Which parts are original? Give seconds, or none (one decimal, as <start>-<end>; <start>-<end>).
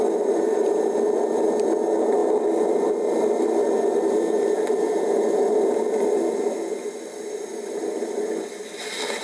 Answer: 0.0-9.2